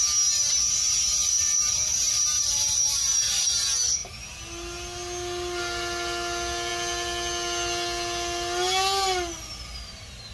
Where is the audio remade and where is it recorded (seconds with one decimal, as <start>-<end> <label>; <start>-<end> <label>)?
0.0-1.0 recorded; 1.0-3.2 remade; 3.2-10.3 recorded